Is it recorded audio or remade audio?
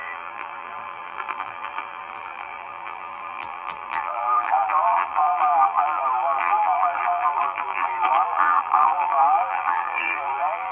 remade